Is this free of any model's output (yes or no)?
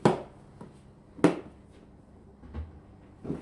yes